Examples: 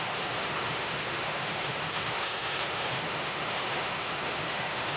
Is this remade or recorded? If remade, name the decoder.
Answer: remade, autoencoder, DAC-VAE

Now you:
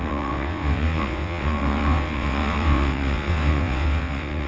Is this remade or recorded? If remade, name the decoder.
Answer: remade, vocoder, WaveNeXt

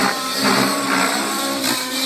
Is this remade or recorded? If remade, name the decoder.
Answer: remade, vocoder, BigVGAN v2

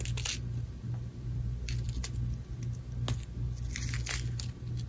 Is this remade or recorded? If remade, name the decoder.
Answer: recorded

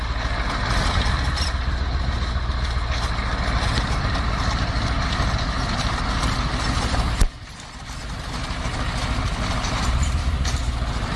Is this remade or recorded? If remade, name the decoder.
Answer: recorded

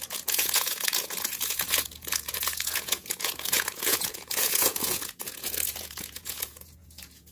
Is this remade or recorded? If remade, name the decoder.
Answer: remade, vocoder, Vocos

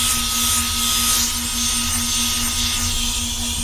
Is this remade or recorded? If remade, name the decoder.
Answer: recorded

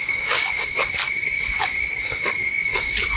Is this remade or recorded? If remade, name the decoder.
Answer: remade, codec, DAC